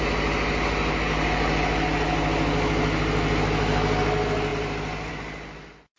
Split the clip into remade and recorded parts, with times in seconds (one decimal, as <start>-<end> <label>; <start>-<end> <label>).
0.0-6.0 recorded